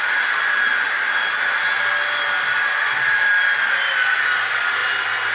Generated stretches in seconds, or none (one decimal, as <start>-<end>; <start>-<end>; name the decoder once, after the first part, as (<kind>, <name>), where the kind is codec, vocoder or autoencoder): none